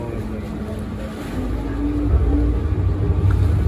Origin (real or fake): real